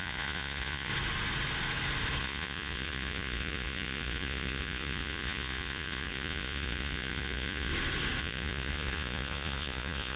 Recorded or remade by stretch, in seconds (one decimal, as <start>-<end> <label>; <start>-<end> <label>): 0.0-0.9 remade; 0.9-2.2 recorded; 2.2-7.7 remade; 7.7-8.2 recorded; 8.2-10.2 remade